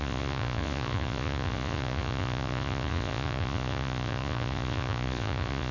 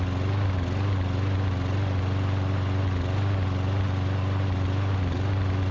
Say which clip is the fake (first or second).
first